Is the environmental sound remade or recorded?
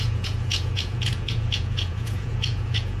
remade